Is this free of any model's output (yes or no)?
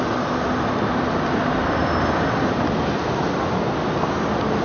yes